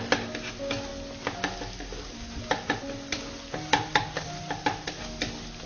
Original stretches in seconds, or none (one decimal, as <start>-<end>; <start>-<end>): 0.0-5.7